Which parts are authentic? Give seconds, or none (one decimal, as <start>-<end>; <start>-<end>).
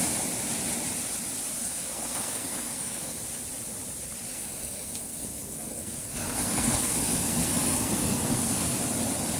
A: 0.0-1.6; 3.2-4.3; 8.8-9.4